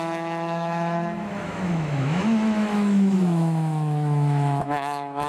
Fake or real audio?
fake